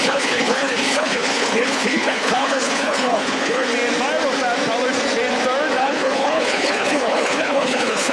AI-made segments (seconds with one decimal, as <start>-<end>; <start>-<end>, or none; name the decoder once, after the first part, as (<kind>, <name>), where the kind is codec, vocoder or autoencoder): 0.0-3.7 (codec, HILCodec); 5.8-8.1